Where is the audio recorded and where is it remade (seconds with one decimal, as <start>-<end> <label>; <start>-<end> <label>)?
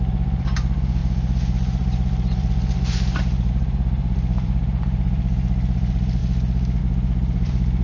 0.0-6.2 remade; 6.2-6.8 recorded; 6.8-7.8 remade